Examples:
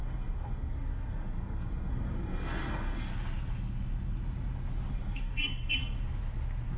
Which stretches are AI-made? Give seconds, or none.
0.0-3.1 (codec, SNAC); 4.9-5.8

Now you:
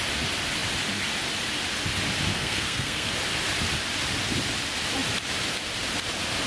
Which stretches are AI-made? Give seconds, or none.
2.3-3.1 (codec, SNAC)

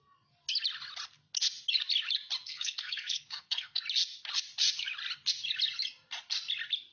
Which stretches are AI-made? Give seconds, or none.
2.4-3.8 (codec, SNAC)

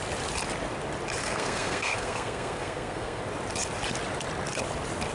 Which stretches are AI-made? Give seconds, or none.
1.2-3.2 (codec, SNAC)